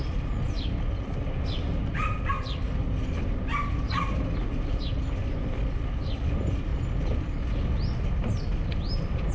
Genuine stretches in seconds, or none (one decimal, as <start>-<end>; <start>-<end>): 0.0-9.3